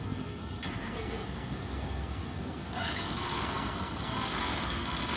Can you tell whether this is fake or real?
fake